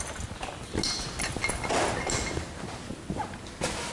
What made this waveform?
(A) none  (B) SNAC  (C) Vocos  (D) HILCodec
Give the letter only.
A